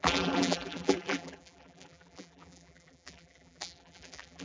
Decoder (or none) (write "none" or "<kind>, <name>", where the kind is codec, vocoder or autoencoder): vocoder, BigVGAN v2